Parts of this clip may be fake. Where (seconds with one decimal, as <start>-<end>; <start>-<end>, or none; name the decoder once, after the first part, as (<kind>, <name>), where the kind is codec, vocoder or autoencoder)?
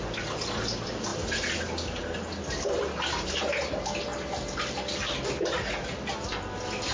none